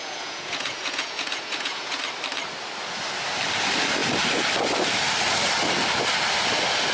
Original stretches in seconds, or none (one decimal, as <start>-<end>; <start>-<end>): 2.0-6.9